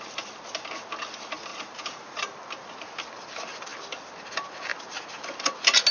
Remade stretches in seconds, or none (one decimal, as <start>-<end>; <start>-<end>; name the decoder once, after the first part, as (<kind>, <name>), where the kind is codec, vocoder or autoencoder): 1.5-2.4 (vocoder, BigVGAN v2)